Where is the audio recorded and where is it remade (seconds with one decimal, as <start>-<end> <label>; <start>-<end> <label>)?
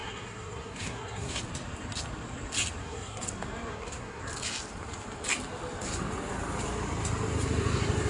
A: 0.0-1.4 remade; 1.4-2.8 recorded; 2.8-3.3 remade; 3.3-3.7 recorded; 3.7-4.2 remade; 4.2-8.1 recorded